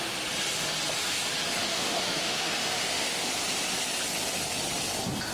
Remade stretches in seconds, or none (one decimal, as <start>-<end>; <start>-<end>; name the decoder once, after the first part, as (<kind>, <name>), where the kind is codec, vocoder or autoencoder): 1.7-3.3 (autoencoder, DAC-VAE)